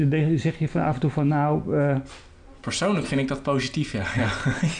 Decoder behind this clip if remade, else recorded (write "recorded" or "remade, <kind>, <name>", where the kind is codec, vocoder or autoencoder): recorded